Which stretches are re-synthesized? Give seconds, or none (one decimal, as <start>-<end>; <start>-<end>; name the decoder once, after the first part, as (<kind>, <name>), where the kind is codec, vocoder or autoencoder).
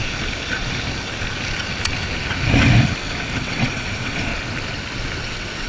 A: 3.4-4.3 (vocoder, WaveNeXt); 5.2-5.7